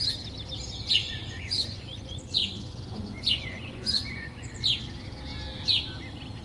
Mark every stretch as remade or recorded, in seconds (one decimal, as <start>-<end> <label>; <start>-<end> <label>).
0.0-1.0 recorded; 1.0-4.8 remade; 4.8-6.4 recorded